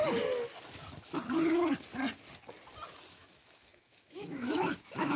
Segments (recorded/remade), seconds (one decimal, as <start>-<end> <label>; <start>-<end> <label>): 0.0-3.1 recorded; 3.1-5.2 remade